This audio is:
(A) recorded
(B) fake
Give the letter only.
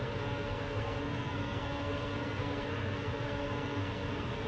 B